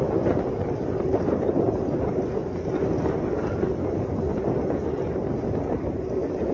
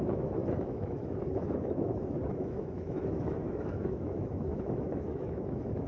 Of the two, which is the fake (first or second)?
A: second